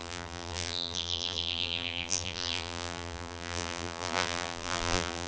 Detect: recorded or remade remade